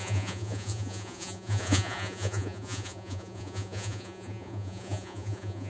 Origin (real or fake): fake